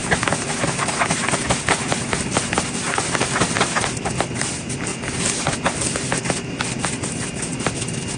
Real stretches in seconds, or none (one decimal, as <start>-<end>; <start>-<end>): 0.0-3.6; 4.9-6.2